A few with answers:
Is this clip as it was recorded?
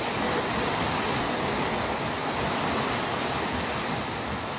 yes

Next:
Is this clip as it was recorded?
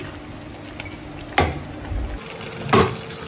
yes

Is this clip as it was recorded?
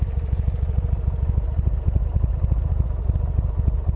yes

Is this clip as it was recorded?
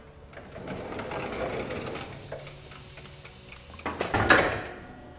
yes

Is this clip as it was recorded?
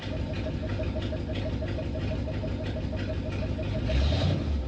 yes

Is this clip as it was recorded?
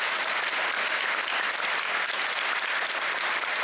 yes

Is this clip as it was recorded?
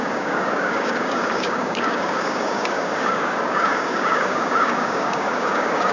no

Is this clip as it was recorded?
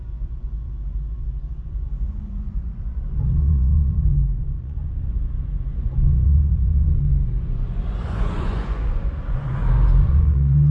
no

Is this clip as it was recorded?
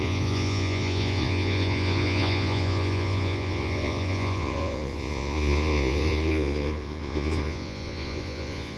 no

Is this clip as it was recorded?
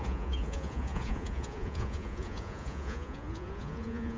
no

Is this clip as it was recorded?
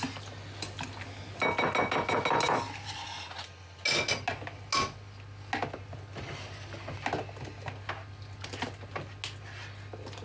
yes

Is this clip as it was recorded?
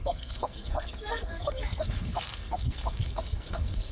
no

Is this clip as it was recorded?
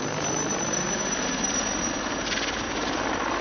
yes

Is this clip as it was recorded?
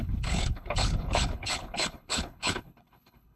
no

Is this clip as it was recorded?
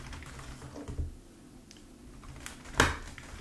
yes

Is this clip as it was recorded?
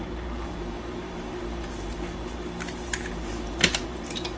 no